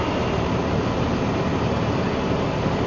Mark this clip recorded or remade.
recorded